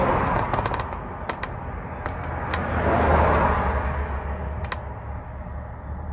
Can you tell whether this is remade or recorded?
recorded